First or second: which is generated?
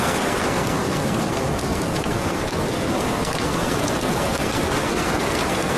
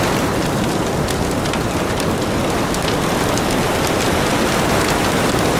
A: first